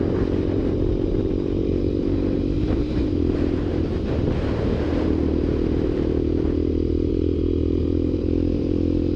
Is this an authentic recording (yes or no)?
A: no